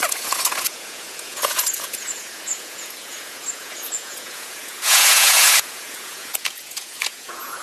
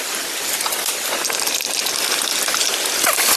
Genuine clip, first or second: second